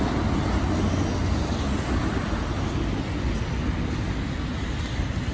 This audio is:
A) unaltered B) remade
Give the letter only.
A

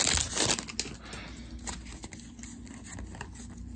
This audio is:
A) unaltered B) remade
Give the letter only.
A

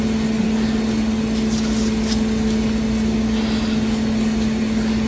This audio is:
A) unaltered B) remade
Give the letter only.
A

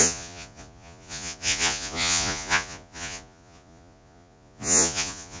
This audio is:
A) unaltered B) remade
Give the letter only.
B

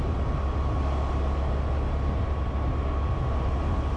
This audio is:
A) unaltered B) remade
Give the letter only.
A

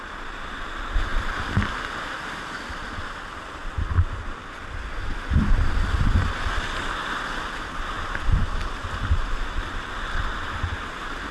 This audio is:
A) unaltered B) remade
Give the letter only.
A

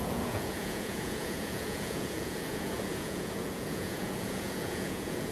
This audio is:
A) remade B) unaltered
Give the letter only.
A